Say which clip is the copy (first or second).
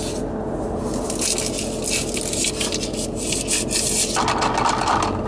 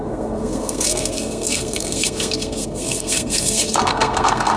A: second